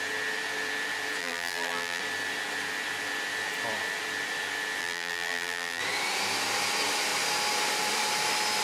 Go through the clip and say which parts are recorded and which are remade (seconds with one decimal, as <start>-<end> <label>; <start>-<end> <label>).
0.0-1.2 recorded; 1.2-2.0 remade; 2.0-4.8 recorded; 4.8-5.8 remade; 5.8-8.6 recorded